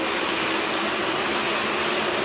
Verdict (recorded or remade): recorded